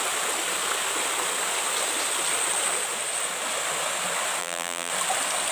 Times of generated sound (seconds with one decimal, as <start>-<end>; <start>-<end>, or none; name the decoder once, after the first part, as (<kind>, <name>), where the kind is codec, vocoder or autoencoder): 4.4-4.9 (vocoder, BigVGAN v2)